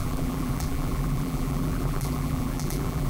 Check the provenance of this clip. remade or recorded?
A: remade